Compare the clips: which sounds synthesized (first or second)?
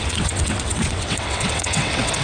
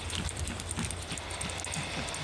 first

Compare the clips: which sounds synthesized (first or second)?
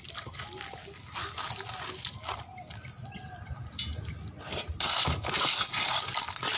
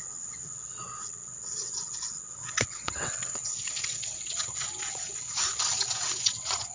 second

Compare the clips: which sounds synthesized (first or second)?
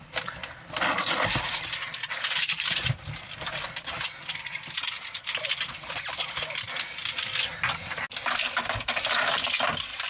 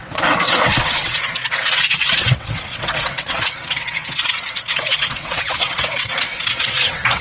second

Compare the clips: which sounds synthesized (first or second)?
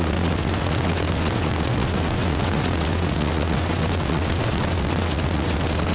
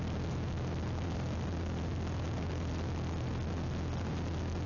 first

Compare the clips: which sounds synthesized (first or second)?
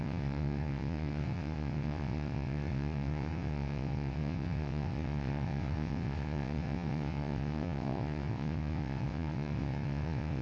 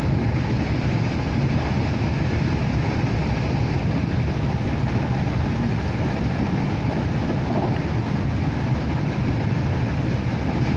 first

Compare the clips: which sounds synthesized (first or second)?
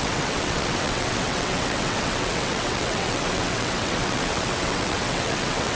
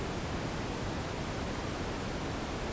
first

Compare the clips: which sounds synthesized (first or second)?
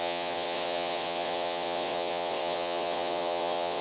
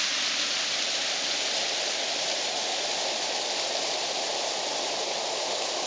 first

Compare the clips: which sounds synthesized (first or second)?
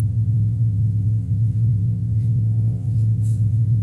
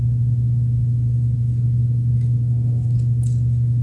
first